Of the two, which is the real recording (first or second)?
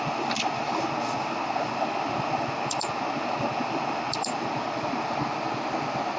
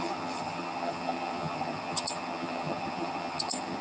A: first